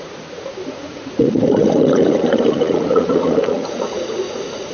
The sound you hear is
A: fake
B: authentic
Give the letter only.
A